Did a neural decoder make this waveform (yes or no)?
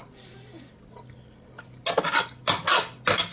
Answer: no